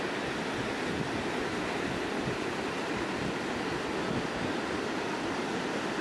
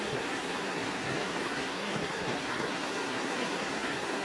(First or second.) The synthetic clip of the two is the second